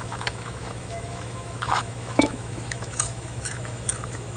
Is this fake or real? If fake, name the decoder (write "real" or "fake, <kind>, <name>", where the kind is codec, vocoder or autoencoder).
fake, autoencoder, DAC-VAE